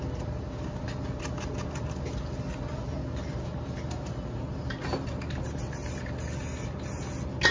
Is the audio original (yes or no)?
yes